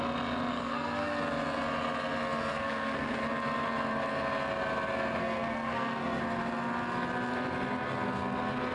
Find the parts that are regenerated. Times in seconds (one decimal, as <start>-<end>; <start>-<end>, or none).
0.5-1.2; 2.5-3.2; 5.2-6.2